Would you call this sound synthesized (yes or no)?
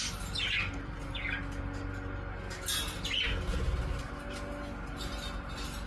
no